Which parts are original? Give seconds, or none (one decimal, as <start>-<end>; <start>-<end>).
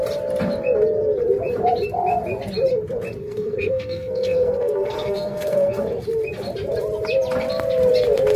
0.0-3.2; 5.8-8.4